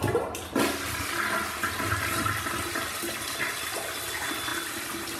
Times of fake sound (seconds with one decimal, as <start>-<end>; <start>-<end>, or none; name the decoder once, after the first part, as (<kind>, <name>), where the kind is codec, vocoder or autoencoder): none